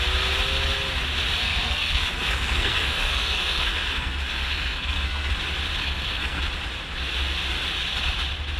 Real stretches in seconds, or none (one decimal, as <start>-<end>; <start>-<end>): 0.0-1.4; 5.3-5.8; 6.4-8.6